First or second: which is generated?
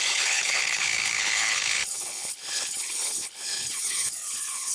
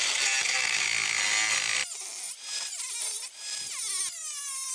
first